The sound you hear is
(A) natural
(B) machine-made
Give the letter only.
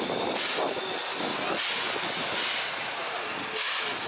A